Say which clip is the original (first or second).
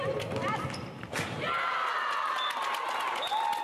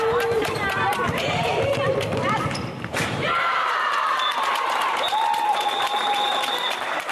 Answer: first